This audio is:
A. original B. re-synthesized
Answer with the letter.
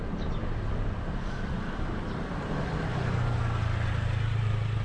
A